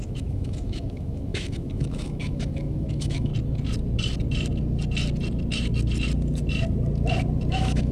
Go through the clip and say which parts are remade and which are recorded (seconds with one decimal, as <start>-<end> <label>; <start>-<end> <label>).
0.0-3.3 remade; 3.3-7.5 recorded; 7.5-7.9 remade